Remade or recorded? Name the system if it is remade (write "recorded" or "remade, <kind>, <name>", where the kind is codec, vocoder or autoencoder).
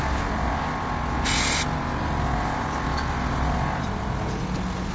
recorded